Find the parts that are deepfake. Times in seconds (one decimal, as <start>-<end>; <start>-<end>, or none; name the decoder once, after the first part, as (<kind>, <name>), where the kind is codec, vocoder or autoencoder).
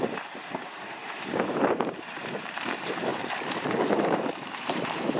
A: 0.0-5.2 (vocoder, BigVGAN v2)